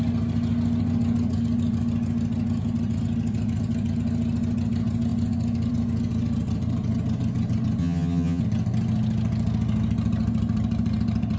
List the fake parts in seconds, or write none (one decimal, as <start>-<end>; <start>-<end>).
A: 7.8-8.4